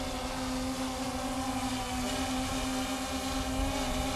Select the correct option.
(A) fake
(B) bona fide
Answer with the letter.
B